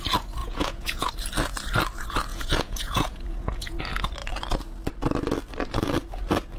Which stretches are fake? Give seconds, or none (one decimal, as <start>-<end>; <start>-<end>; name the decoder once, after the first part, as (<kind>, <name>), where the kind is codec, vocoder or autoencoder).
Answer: 0.4-1.1 (vocoder, Vocos); 2.3-3.8